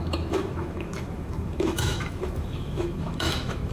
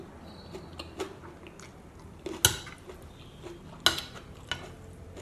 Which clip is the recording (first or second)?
second